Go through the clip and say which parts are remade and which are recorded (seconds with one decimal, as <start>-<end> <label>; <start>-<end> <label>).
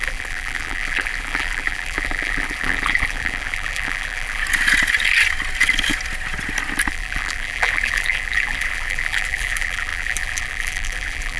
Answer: 0.0-4.4 remade; 4.4-6.9 recorded; 6.9-11.4 remade